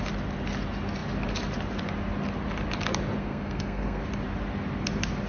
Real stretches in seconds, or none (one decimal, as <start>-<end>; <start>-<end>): 0.0-3.2; 4.0-5.3